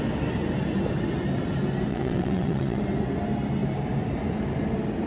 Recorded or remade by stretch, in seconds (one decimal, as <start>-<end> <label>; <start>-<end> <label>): 0.0-1.9 recorded; 1.9-2.8 remade; 2.8-5.1 recorded